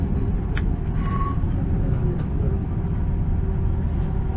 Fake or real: real